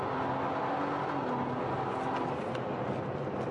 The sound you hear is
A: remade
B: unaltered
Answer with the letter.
B